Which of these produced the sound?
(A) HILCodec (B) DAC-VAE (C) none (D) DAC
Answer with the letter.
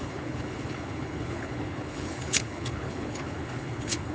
A